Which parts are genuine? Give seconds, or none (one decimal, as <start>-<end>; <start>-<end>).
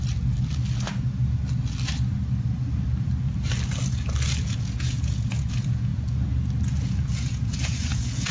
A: 0.0-4.4; 5.9-6.8